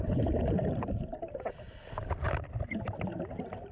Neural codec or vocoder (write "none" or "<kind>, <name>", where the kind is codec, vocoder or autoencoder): none